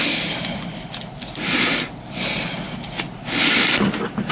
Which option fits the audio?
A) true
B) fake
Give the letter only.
A